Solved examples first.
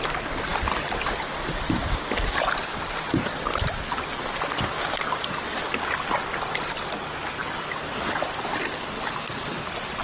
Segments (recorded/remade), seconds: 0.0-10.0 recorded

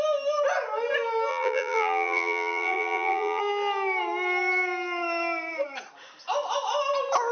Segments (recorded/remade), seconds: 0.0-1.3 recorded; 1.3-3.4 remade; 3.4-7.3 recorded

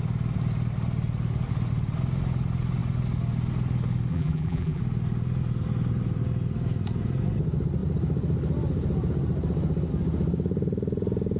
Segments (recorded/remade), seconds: 0.0-4.1 recorded; 4.1-4.8 remade; 4.8-11.4 recorded